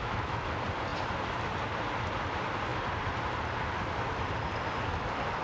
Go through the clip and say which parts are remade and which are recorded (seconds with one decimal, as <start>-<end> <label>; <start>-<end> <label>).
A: 0.0-0.5 remade; 0.5-5.4 recorded